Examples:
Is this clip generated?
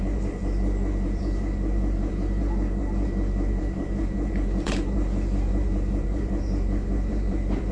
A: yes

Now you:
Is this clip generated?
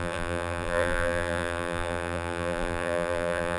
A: yes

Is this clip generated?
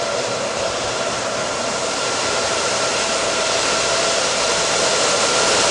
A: yes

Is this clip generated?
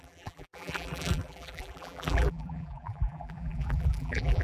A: yes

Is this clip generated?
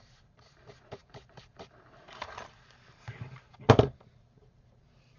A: yes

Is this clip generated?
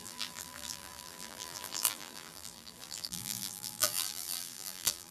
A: yes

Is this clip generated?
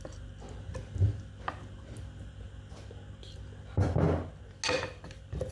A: no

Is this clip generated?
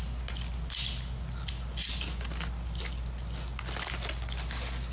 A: no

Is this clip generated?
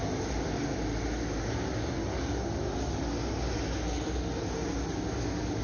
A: no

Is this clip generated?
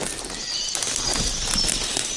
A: no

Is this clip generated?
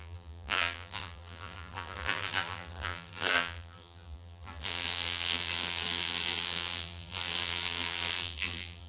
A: yes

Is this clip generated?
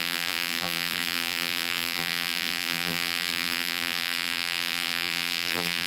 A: yes